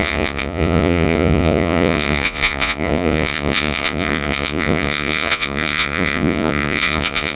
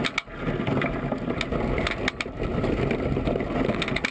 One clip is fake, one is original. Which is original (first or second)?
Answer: second